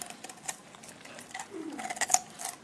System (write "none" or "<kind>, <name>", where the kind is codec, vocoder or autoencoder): none